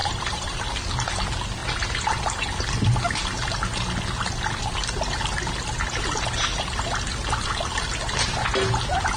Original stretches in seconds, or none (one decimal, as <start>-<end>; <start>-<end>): 0.6-9.2